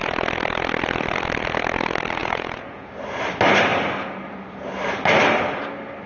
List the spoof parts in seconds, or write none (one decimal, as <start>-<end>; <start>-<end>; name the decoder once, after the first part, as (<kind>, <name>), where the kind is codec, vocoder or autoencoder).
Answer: 2.2-2.9 (vocoder, Vocos)

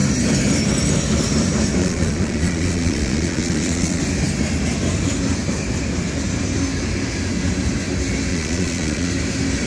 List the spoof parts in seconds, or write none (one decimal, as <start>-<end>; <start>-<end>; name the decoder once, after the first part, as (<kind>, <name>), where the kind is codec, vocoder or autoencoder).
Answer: 1.8-4.0 (vocoder, Vocos); 8.3-9.1

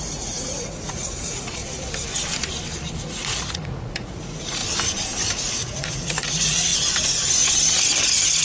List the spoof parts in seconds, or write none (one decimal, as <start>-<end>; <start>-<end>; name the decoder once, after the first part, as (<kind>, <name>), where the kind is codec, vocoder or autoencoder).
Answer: 0.0-1.6 (vocoder, Vocos); 3.0-4.6; 5.3-6.7

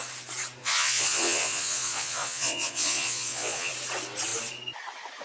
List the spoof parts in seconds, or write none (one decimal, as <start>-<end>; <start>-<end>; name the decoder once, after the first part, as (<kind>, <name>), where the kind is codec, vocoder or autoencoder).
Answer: 0.6-3.7 (vocoder, Vocos)

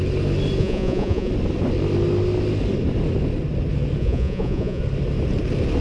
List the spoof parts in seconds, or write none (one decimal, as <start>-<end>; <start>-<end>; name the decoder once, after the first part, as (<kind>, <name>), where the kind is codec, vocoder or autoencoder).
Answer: 0.6-1.3 (vocoder, Vocos); 4.0-4.8

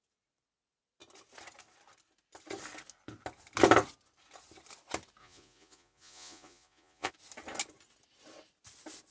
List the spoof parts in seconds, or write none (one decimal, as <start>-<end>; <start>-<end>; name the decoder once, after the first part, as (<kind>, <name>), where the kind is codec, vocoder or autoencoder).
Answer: 5.2-7.1 (vocoder, Vocos)

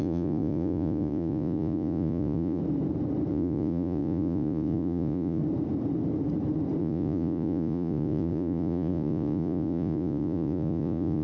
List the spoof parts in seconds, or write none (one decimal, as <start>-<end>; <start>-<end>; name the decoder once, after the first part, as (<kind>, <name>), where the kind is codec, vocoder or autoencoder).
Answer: 0.0-2.6 (vocoder, Vocos); 3.3-5.4; 6.8-11.2

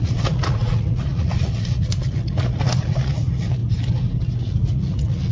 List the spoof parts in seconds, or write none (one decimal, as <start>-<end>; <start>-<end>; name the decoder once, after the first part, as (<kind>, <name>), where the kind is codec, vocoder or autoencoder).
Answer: 0.0-3.6 (vocoder, Vocos); 4.4-5.3